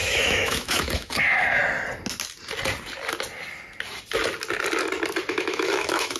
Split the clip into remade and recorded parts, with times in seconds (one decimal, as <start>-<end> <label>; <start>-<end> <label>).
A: 0.0-1.6 remade; 1.6-5.3 recorded; 5.3-6.2 remade